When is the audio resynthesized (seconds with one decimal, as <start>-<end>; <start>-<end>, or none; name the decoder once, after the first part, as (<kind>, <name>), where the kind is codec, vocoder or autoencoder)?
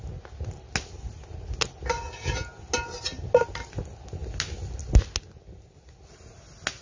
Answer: none